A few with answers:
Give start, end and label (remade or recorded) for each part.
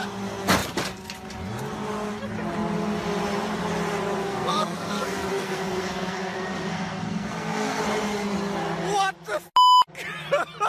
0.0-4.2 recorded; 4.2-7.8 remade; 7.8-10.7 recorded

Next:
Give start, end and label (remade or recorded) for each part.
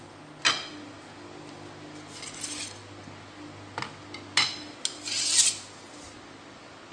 0.0-6.9 recorded